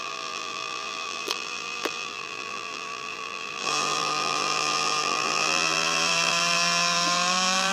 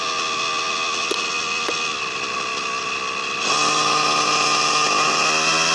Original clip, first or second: second